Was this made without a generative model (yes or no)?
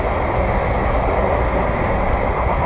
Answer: yes